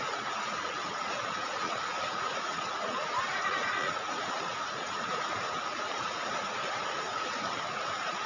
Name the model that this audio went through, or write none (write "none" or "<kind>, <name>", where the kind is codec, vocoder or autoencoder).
vocoder, Vocos